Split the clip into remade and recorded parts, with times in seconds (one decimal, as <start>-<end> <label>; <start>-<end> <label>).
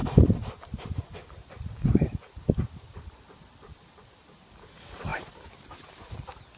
0.0-6.6 recorded